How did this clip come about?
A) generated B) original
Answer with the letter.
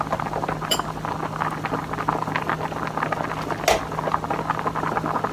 B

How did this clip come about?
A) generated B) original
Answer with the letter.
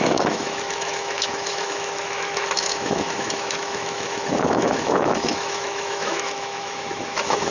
A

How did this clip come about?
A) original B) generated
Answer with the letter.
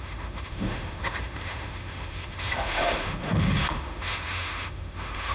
B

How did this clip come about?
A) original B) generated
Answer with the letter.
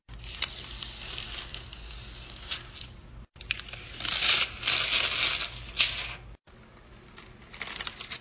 A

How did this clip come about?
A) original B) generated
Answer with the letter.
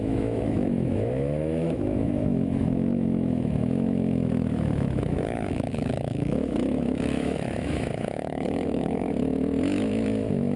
B